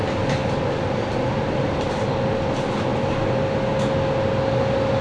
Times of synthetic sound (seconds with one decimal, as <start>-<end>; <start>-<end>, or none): none